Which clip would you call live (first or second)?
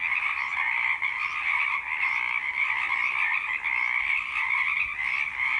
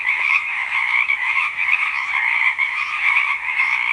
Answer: first